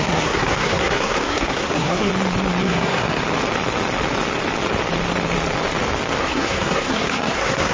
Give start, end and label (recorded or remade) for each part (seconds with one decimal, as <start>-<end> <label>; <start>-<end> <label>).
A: 0.0-2.1 remade; 2.1-2.6 recorded; 2.6-3.2 remade; 3.2-6.2 recorded; 6.2-7.7 remade